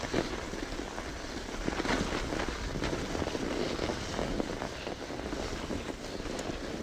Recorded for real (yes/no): yes